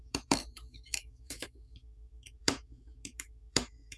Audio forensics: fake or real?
fake